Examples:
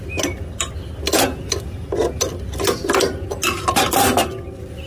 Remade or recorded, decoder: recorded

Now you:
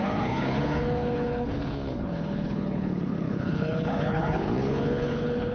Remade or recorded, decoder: remade, codec, HILCodec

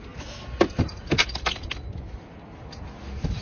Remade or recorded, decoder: recorded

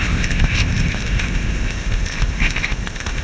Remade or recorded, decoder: remade, codec, ZipCodec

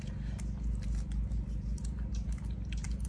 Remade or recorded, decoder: recorded